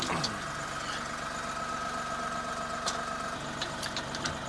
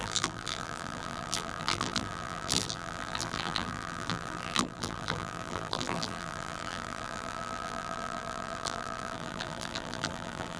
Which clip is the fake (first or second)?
second